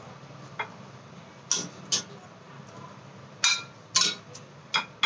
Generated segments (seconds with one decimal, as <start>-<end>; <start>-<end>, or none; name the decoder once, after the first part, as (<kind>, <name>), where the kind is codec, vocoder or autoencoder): none